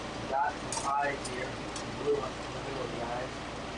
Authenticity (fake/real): real